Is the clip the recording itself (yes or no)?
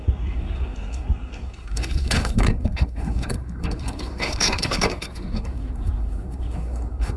no